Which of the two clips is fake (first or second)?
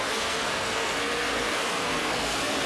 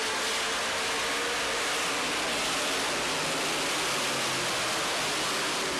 first